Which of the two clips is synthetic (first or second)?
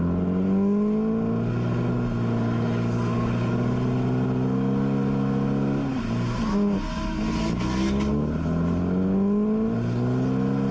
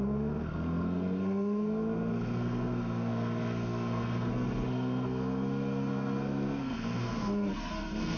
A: second